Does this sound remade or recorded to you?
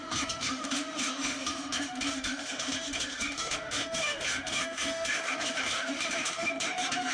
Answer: remade